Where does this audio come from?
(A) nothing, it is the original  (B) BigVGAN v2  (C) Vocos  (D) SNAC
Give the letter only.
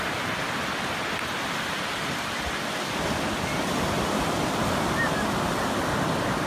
A